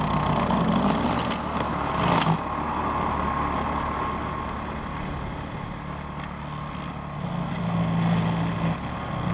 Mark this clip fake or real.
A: real